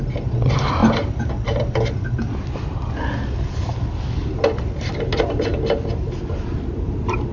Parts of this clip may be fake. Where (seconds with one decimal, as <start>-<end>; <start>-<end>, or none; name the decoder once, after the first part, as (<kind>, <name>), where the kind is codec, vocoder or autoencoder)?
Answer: none